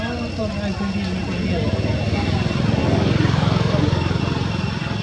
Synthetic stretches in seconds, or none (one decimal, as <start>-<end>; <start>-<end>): 2.8-4.2